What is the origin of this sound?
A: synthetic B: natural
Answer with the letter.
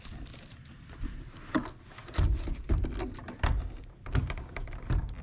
B